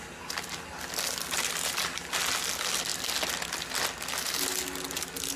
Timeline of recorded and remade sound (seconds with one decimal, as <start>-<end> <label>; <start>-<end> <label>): 0.0-5.4 recorded

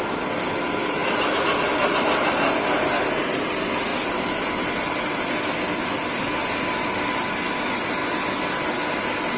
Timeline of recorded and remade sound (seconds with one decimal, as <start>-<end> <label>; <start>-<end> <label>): 0.0-9.4 recorded

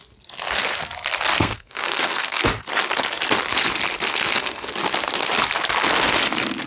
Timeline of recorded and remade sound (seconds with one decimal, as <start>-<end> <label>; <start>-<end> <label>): 0.0-1.3 recorded; 1.3-2.4 remade; 2.4-4.1 recorded; 4.1-4.7 remade; 4.7-6.7 recorded

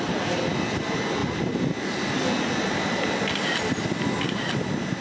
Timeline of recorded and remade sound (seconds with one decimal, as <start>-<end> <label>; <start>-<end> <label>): 0.0-5.0 recorded

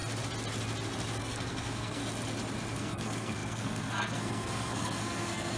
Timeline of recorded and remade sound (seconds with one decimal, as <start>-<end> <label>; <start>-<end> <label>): 0.0-1.2 recorded; 1.2-2.0 remade; 2.0-2.7 recorded; 2.7-5.6 remade

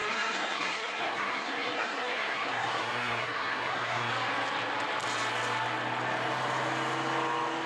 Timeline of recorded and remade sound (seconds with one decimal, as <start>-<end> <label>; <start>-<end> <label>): 0.0-4.1 remade; 4.1-7.7 recorded

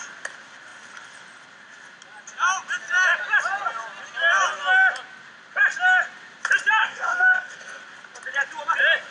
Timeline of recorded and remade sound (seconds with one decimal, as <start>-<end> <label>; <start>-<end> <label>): 0.0-6.8 recorded; 6.8-7.8 remade; 7.8-9.1 recorded